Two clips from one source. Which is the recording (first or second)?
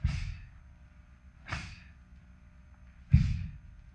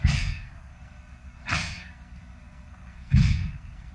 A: first